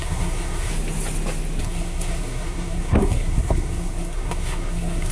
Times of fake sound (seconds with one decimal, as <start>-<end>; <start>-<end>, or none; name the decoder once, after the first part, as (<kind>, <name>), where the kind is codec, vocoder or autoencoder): 0.0-0.7 (codec, SNAC); 1.6-5.1